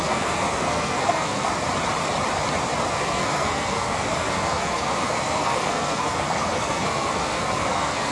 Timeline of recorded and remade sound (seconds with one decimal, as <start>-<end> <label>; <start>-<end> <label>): 0.0-1.5 remade; 1.5-2.9 recorded; 2.9-8.1 remade